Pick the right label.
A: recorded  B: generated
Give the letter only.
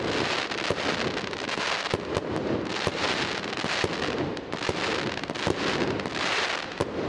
A